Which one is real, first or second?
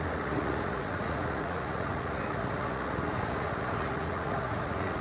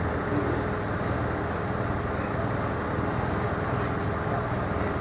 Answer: second